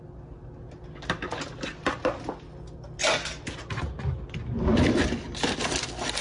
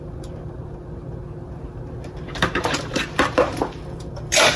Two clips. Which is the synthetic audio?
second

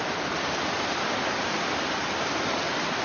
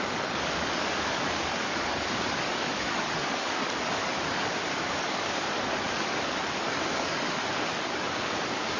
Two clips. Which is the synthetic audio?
second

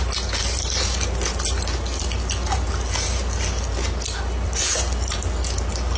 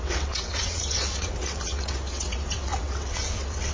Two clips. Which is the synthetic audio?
second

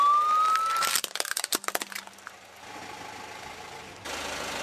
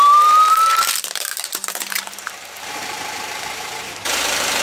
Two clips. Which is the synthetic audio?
second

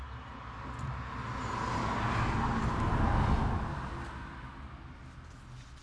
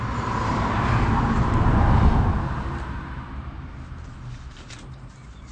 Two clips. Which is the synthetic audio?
second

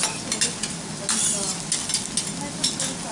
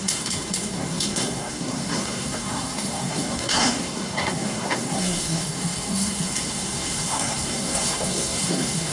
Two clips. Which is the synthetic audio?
second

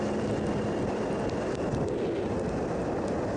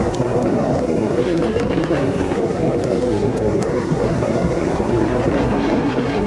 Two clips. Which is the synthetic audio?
second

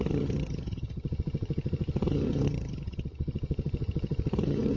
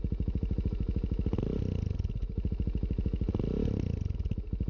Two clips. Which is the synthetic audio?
first